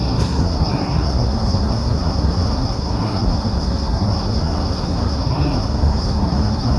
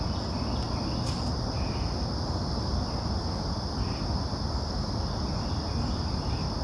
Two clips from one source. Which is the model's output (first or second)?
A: first